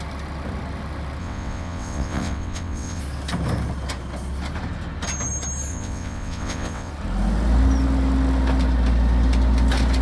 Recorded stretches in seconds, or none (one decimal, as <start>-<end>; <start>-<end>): 0.0-1.2; 3.0-5.7; 6.9-10.0